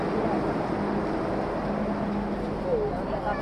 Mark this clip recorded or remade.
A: recorded